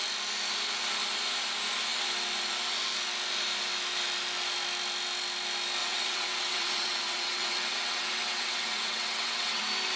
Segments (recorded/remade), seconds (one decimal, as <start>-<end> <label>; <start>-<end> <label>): 0.0-5.8 recorded; 5.8-9.6 remade; 9.6-10.0 recorded